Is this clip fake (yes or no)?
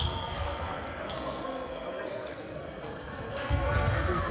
yes